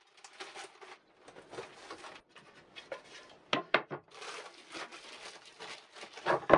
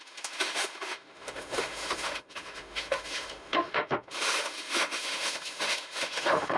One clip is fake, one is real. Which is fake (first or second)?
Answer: second